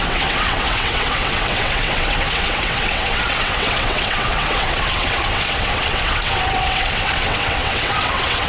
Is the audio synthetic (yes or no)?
yes